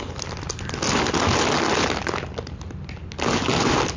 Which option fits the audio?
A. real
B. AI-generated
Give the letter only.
A